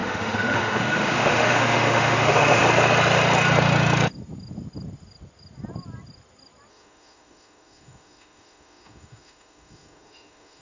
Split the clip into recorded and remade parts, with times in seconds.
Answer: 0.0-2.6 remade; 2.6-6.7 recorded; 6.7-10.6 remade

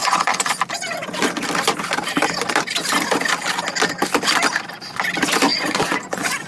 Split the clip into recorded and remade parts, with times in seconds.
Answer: 0.0-0.6 remade; 0.6-5.5 recorded; 5.5-6.5 remade

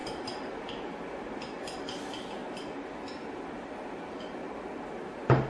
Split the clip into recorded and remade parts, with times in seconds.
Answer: 0.0-0.7 remade; 0.7-5.5 recorded

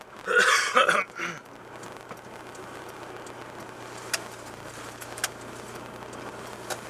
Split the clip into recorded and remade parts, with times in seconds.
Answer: 0.0-6.9 recorded

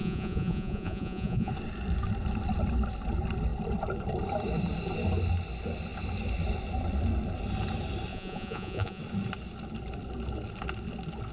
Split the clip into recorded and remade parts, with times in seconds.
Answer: 0.0-1.5 remade; 1.5-8.1 recorded; 8.1-9.0 remade; 9.0-11.3 recorded